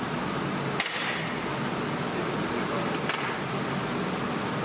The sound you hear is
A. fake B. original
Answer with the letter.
B